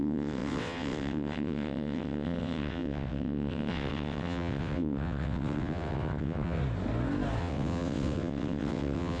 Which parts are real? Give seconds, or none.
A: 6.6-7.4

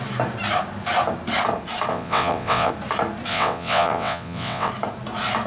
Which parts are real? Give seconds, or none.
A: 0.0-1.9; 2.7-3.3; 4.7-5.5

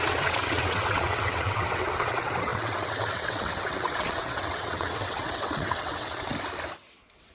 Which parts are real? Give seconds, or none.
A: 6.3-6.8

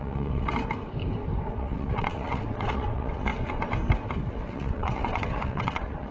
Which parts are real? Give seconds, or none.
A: 0.5-1.5; 3.3-4.3

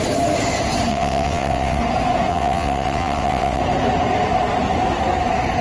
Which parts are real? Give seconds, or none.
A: 0.0-0.9; 1.8-2.3; 3.6-5.6